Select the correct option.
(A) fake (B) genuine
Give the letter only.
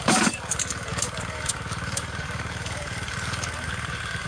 A